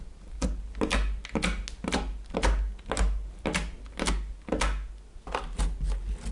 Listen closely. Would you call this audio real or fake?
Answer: real